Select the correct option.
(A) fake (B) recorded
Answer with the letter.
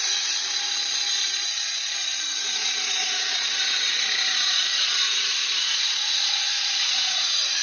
A